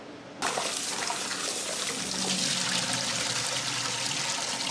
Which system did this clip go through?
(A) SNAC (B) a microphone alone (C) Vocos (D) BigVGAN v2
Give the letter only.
B